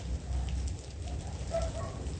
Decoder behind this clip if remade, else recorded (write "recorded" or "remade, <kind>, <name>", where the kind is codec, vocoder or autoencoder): recorded